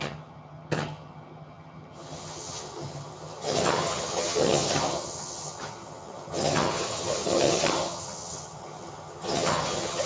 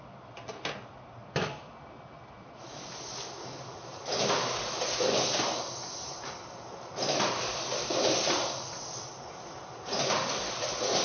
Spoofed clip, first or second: first